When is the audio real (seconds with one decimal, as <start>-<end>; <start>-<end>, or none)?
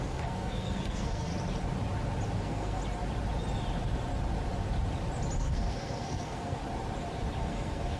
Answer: 1.3-2.4; 2.8-5.4; 6.6-7.4